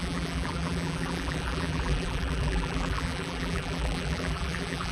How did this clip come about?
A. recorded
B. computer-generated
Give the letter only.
B